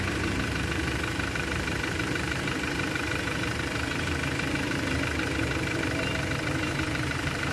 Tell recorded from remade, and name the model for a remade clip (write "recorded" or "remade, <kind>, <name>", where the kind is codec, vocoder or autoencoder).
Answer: remade, vocoder, BigVGAN v2